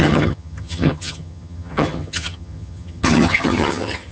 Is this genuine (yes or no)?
no